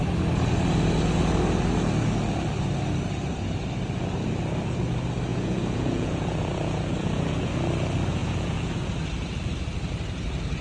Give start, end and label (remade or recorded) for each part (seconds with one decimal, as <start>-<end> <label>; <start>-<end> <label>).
0.0-5.3 recorded; 5.3-7.5 remade; 7.5-8.2 recorded; 8.2-8.9 remade; 8.9-10.6 recorded